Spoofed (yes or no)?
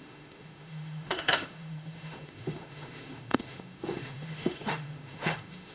yes